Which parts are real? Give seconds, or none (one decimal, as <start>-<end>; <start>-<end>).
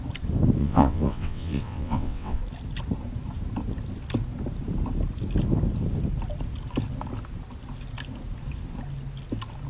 0.0-0.6; 2.4-9.7